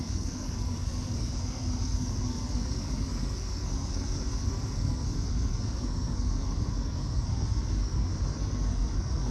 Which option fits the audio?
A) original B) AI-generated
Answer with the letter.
B